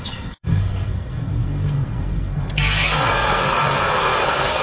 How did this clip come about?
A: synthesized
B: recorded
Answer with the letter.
A